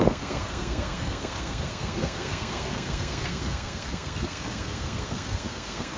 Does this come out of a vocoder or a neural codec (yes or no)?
yes